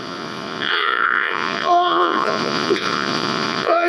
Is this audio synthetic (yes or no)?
yes